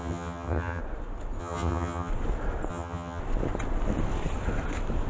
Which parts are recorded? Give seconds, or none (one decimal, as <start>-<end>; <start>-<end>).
0.8-1.4; 2.1-2.7; 3.2-5.1